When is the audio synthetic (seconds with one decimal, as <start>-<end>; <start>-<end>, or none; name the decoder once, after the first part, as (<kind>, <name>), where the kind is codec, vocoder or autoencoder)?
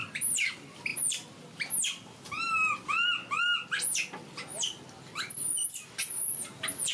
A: none